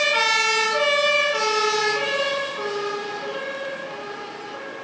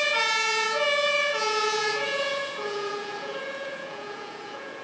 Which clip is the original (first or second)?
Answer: first